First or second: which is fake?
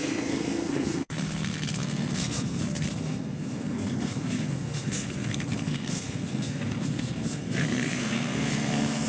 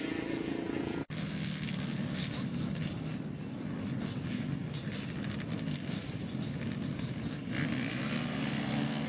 first